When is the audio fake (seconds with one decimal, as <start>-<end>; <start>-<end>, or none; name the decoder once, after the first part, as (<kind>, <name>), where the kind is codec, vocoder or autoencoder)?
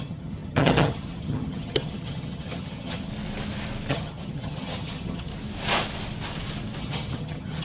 0.0-3.1 (vocoder, HiFi-GAN); 3.9-5.3; 6.8-7.6